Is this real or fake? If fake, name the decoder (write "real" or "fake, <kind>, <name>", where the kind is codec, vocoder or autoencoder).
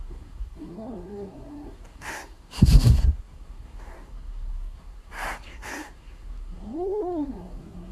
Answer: fake, codec, SNAC